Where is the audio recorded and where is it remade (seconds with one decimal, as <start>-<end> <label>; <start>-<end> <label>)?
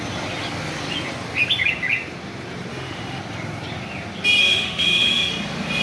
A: 0.0-2.7 recorded; 2.7-3.2 remade; 3.2-4.4 recorded; 4.4-5.3 remade; 5.3-5.8 recorded